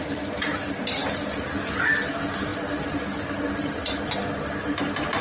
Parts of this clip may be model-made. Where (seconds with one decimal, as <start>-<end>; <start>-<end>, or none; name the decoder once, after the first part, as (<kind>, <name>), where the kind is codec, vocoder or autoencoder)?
none